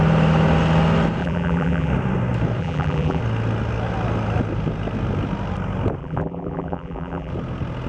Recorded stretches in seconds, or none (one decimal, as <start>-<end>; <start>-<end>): 0.0-1.2; 1.9-2.6; 3.2-6.0; 7.3-7.9